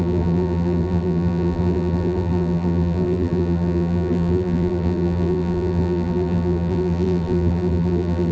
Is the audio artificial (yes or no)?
yes